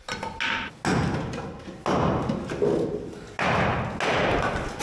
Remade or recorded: recorded